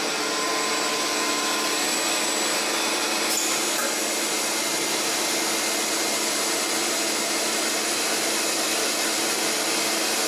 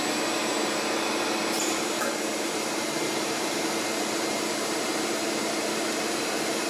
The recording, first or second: first